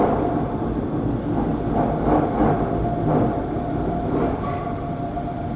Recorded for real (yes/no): yes